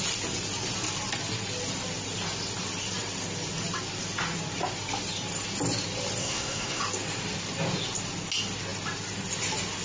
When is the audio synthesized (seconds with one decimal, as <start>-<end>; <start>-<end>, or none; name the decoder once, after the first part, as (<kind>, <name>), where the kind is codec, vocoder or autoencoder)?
6.2-6.8 (codec, SNAC)